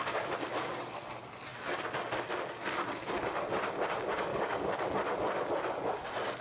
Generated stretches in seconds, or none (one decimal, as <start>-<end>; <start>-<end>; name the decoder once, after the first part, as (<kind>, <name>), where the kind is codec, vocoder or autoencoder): 4.3-4.9 (codec, DAC)